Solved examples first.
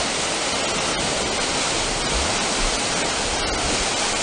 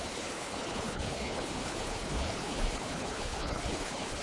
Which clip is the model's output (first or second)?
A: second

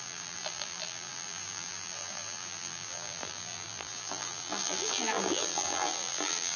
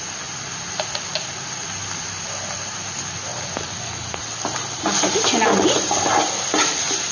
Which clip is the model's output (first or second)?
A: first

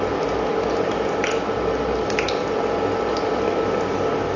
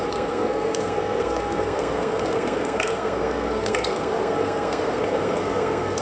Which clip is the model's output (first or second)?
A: second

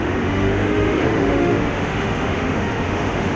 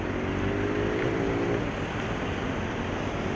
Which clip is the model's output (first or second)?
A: first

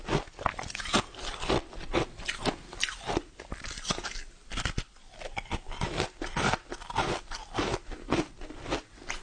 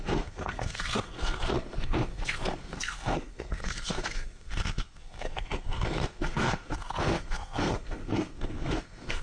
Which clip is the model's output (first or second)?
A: second